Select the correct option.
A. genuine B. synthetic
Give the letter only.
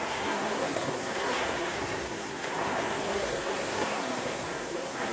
B